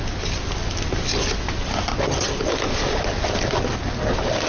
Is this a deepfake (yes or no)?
no